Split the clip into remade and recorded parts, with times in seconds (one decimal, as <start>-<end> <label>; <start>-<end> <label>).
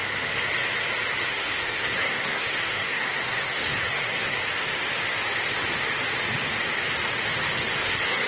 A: 0.0-1.3 recorded; 1.3-4.4 remade; 4.4-7.8 recorded; 7.8-8.3 remade